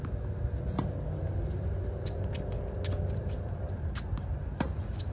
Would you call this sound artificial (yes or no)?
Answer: no